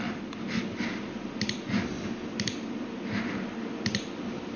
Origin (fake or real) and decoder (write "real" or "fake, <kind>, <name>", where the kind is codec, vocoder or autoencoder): real